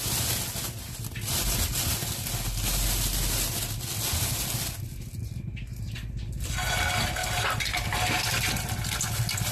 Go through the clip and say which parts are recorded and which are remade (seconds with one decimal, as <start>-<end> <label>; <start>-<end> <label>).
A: 0.0-9.5 recorded